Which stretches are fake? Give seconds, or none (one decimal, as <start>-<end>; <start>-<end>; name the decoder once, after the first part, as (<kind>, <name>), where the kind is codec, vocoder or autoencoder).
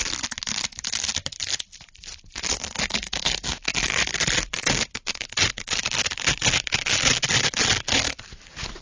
1.1-6.4 (vocoder, BigVGAN v2)